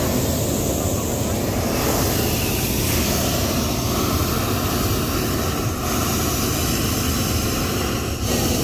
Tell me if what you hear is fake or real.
real